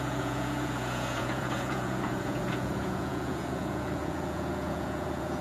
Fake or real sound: fake